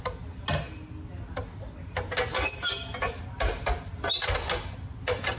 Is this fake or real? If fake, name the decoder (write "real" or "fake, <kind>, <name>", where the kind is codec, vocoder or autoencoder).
real